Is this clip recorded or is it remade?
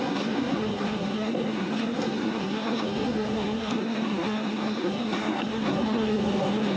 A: remade